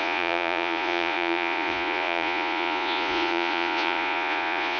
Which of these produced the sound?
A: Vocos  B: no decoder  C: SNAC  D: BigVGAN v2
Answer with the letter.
A